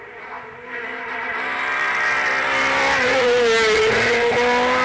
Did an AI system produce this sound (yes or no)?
no